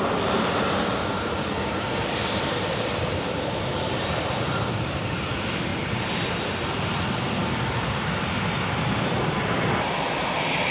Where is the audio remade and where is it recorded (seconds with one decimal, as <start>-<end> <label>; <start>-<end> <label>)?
0.0-5.7 remade; 5.7-6.9 recorded; 6.9-10.7 remade